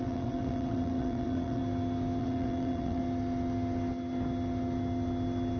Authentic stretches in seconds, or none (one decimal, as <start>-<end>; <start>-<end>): 1.6-2.2; 3.0-5.6